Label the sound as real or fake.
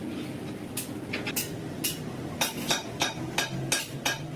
real